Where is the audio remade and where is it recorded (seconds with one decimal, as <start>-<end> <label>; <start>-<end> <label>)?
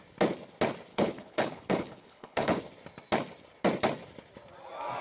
0.0-0.9 recorded; 0.9-2.6 remade; 2.6-5.0 recorded